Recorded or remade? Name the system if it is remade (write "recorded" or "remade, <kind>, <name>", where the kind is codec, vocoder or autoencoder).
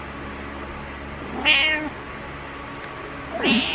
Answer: recorded